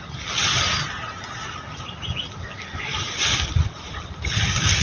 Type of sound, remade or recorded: recorded